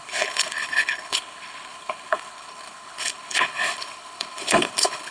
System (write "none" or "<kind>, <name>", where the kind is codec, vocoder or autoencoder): codec, HILCodec